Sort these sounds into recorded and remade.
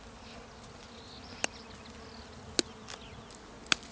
recorded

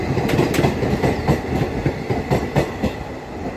recorded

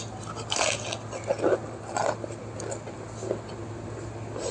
recorded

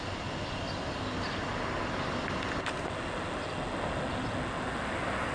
recorded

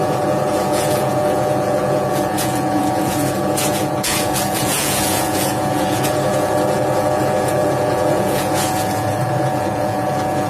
remade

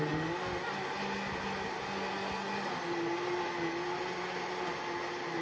recorded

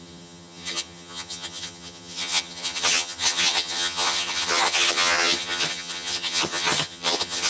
remade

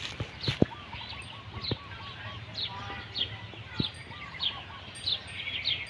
recorded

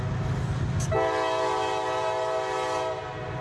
recorded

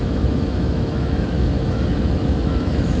remade